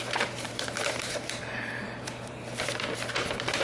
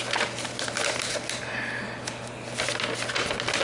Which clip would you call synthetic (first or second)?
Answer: first